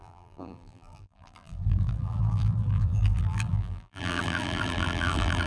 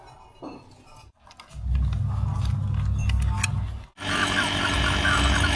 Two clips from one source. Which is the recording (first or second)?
second